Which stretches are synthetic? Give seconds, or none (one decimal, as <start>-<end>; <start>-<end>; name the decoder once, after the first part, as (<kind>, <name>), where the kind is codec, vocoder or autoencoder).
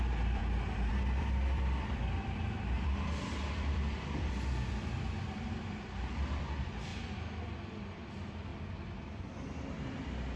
0.0-0.4 (vocoder, BigVGAN v2); 0.9-6.9; 8.1-8.5; 9.3-10.4